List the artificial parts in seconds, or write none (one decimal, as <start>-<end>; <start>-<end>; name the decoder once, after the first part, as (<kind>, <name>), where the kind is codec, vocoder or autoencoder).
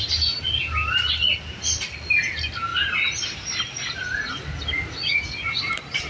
none